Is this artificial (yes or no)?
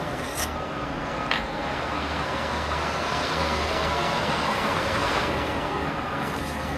yes